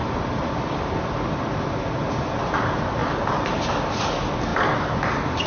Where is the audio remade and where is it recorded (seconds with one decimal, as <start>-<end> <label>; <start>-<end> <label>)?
0.0-1.7 remade; 1.7-3.0 recorded; 3.0-3.7 remade; 3.7-5.5 recorded